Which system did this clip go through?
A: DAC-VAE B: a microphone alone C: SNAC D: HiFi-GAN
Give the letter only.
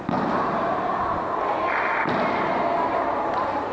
B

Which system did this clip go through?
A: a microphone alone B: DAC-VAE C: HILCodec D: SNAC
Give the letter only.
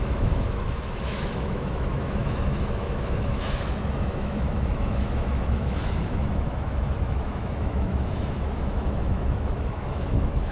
B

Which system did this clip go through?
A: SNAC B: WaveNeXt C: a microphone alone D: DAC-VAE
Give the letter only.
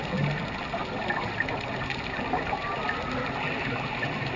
C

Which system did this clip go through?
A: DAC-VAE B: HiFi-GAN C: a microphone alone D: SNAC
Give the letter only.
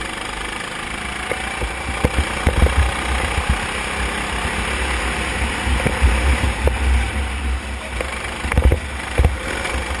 C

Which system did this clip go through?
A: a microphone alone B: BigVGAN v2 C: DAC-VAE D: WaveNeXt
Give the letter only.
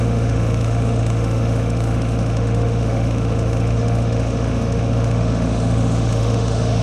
C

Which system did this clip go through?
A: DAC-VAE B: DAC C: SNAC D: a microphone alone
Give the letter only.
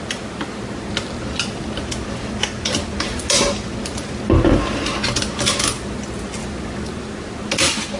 D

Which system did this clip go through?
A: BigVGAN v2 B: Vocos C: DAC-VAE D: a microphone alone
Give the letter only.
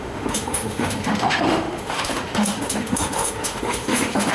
C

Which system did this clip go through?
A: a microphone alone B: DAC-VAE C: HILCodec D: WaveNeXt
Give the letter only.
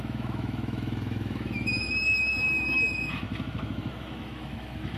B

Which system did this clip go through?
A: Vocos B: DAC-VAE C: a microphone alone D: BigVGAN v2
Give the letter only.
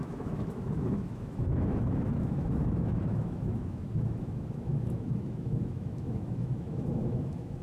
B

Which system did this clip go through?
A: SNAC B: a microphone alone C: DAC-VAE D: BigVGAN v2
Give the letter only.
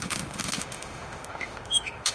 C